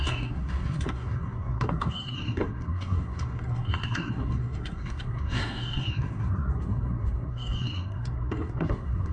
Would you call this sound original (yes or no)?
no